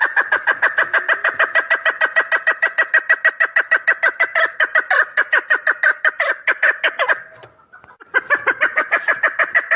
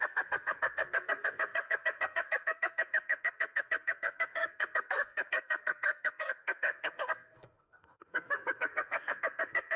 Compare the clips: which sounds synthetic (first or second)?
second